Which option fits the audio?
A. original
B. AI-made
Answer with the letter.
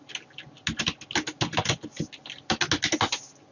A